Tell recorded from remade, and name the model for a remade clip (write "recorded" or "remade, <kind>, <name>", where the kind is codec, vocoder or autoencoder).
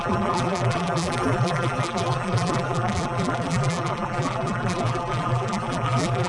remade, vocoder, BigVGAN v2